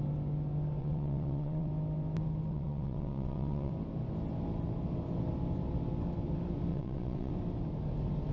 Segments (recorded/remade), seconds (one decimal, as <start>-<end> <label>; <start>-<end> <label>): 0.0-0.8 recorded; 0.8-1.7 remade; 1.7-2.5 recorded; 2.5-3.7 remade; 3.7-6.7 recorded; 6.7-7.3 remade; 7.3-8.3 recorded